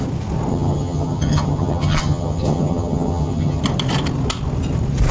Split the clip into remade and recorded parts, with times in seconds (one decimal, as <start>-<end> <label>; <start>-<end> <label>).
0.0-0.5 recorded; 0.5-3.6 remade; 3.6-5.1 recorded